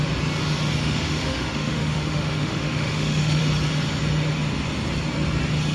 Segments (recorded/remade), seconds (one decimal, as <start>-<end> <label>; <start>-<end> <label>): 0.0-0.8 recorded; 0.8-3.4 remade; 3.4-5.7 recorded